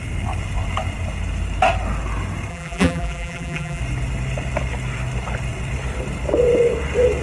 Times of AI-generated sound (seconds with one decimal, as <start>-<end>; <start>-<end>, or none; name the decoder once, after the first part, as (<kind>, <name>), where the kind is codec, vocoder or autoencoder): 2.5-3.8 (vocoder, BigVGAN v2)